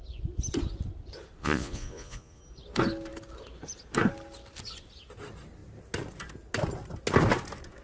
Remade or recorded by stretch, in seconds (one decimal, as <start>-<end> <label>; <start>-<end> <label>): 0.0-1.4 recorded; 1.4-2.4 remade; 2.4-7.8 recorded